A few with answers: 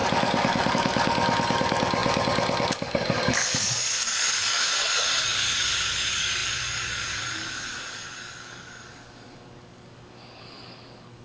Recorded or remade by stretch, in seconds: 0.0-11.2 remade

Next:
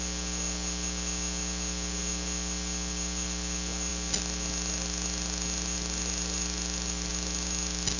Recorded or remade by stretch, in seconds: 0.0-8.0 recorded

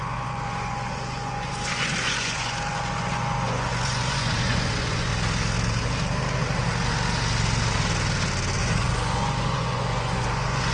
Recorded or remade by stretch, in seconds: 0.0-5.1 remade; 5.1-8.6 recorded; 8.6-10.7 remade

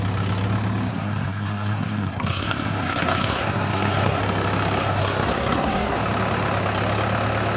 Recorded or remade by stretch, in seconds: 0.0-0.9 recorded; 0.9-4.2 remade; 4.2-4.8 recorded; 4.8-6.0 remade; 6.0-7.6 recorded

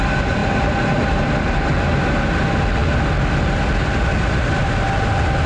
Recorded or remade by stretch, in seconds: 0.0-5.5 recorded

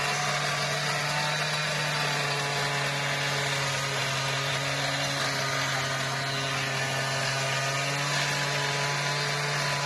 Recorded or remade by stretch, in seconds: 0.0-9.9 recorded